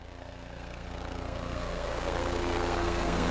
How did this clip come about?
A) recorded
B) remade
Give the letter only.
B